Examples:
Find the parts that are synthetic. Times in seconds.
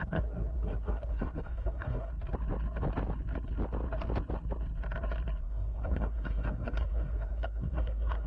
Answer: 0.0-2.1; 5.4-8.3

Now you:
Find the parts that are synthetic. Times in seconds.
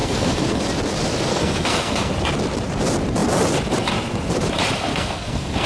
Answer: 0.0-0.6; 1.3-2.1; 4.9-5.7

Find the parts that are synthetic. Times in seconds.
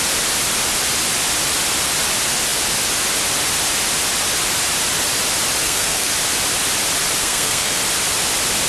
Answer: 5.6-6.1; 7.2-7.8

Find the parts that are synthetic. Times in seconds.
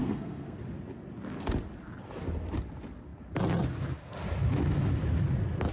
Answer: 0.0-0.6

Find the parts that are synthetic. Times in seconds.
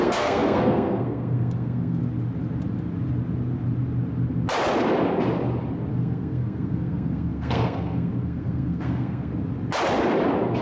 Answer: 0.0-2.0; 5.9-9.3